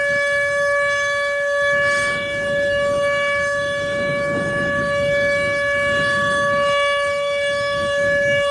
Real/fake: fake